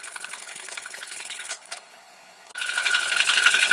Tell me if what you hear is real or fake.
fake